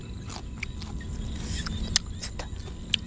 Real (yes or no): yes